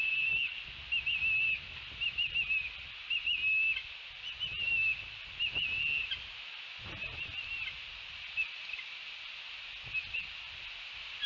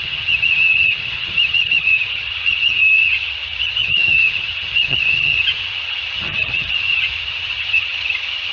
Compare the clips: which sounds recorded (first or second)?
first